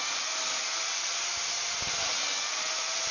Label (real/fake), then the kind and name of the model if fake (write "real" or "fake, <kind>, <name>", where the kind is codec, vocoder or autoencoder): real